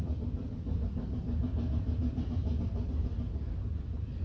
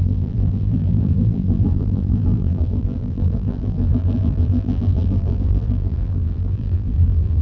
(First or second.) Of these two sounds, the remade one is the second